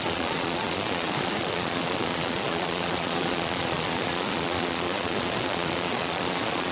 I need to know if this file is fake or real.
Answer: fake